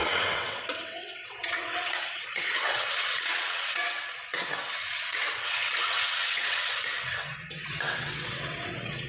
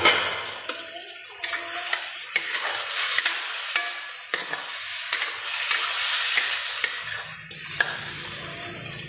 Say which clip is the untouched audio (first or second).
second